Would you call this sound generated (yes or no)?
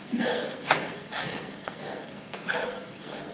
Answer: yes